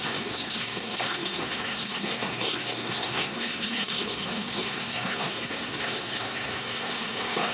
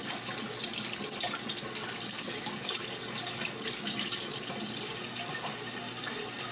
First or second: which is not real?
first